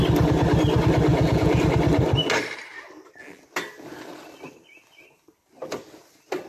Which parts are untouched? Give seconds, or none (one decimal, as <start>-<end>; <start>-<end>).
0.0-1.1; 1.6-6.5